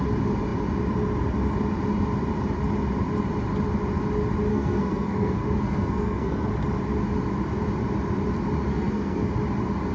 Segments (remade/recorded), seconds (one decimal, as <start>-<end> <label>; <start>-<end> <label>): 0.0-4.5 recorded; 4.5-6.5 remade; 6.5-8.7 recorded; 8.7-9.3 remade; 9.3-9.9 recorded